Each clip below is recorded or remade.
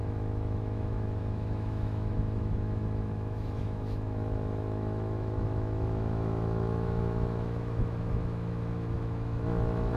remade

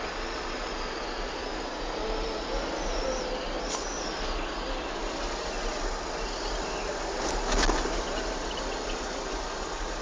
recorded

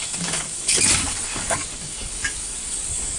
remade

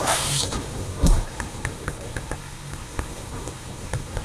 remade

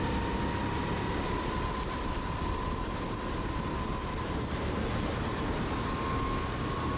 recorded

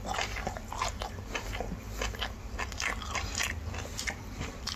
remade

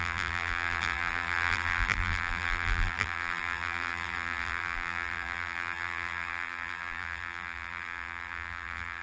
remade